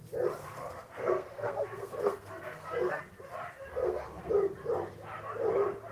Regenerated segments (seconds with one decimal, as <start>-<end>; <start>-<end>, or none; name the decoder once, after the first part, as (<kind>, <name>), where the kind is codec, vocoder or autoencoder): 0.4-3.0 (codec, SNAC); 3.7-4.3